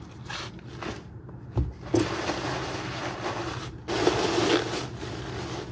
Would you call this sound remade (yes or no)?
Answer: no